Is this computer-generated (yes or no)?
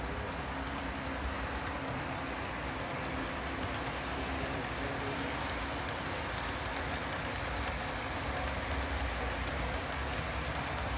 no